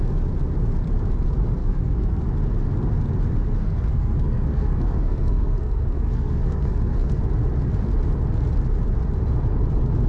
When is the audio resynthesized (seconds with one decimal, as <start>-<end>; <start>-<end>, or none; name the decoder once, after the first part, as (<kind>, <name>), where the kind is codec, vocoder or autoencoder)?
1.6-2.2 (codec, SNAC); 3.6-7.2